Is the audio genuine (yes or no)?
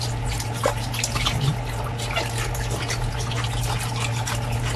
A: yes